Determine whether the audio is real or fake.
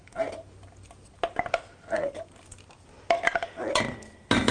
real